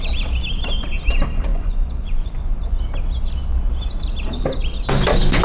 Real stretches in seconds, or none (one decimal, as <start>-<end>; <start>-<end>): 0.0-1.5; 2.8-5.4